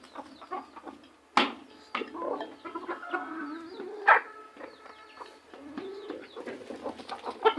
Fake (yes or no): no